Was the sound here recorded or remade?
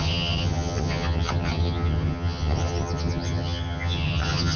remade